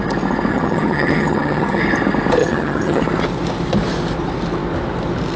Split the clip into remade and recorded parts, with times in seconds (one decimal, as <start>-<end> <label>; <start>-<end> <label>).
0.0-0.5 recorded; 0.5-1.8 remade; 1.8-2.4 recorded; 2.4-3.0 remade; 3.0-5.4 recorded